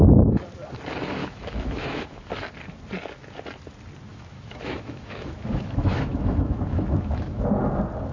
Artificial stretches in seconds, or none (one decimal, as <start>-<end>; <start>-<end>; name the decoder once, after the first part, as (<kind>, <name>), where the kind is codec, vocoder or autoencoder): 1.2-2.3 (autoencoder, DAC-VAE); 4.1-7.4